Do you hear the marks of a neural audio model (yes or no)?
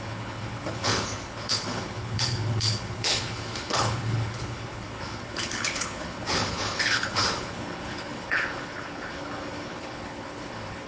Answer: yes